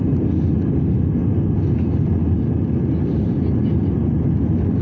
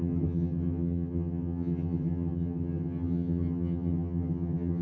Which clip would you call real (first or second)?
first